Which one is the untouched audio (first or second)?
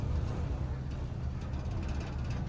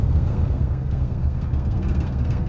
first